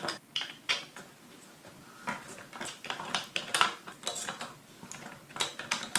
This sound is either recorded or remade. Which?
recorded